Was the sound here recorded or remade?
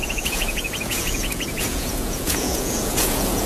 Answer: remade